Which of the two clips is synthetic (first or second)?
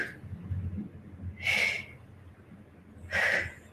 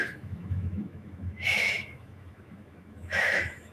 second